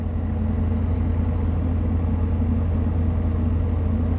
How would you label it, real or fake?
real